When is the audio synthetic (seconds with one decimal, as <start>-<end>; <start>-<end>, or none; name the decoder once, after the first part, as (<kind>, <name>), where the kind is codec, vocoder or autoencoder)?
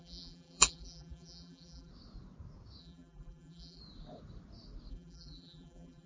0.0-1.9 (vocoder, BigVGAN v2); 2.8-3.8; 4.9-6.1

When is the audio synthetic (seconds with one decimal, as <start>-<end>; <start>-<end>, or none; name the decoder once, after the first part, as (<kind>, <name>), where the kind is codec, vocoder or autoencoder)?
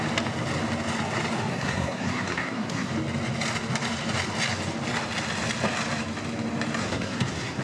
1.5-2.9 (codec, SNAC); 6.8-7.6